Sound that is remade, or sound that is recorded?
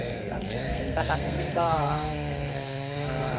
remade